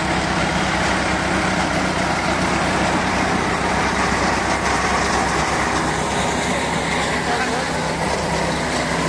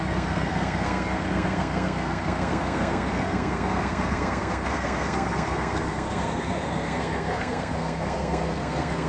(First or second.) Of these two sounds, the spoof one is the second